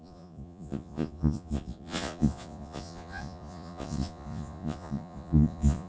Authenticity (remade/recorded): remade